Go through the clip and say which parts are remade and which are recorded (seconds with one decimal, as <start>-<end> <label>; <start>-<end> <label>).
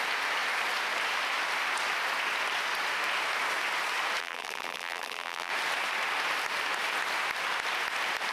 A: 0.0-4.2 recorded; 4.2-5.5 remade; 5.5-8.3 recorded